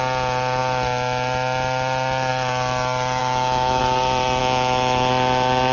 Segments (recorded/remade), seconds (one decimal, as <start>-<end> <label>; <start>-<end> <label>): 0.0-3.2 recorded; 3.2-3.8 remade; 3.8-4.4 recorded; 4.4-5.1 remade; 5.1-5.7 recorded